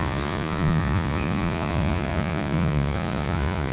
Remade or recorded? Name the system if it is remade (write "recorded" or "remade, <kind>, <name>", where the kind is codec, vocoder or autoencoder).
remade, vocoder, Vocos